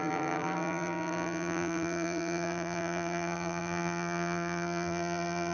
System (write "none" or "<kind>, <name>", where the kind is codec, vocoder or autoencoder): vocoder, BigVGAN v2